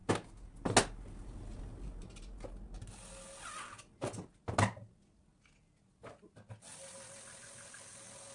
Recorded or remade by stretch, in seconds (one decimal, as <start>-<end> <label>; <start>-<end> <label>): 0.0-8.3 recorded